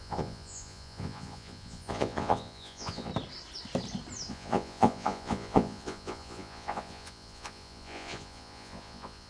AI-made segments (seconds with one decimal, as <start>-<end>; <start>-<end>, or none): 0.0-3.1; 4.3-9.3